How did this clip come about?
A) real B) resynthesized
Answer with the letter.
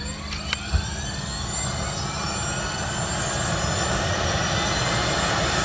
A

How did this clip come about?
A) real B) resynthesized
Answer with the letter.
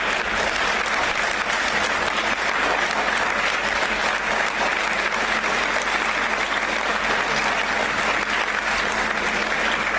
A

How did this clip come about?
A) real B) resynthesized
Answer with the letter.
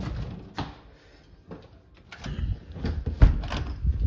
A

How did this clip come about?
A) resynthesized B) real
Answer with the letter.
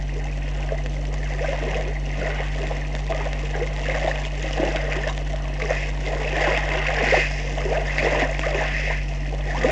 B